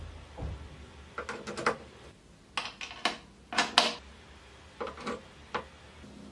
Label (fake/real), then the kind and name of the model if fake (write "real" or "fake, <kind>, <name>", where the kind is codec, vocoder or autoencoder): real